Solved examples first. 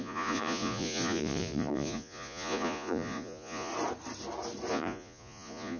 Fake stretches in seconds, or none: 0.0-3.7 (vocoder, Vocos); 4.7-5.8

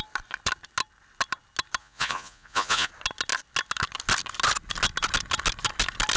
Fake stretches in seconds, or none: 1.8-2.9 (vocoder, Vocos)

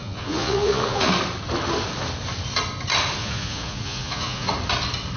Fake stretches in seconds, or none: 0.0-1.1 (vocoder, Vocos); 3.2-4.5

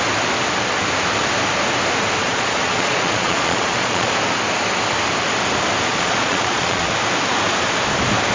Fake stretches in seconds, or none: 2.2-4.1 (vocoder, Vocos); 5.9-6.9